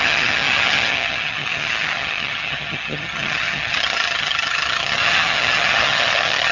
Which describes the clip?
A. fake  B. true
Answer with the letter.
A